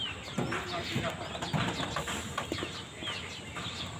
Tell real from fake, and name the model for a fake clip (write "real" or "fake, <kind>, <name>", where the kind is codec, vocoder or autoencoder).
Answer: real